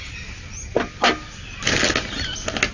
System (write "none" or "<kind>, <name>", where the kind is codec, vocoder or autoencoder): none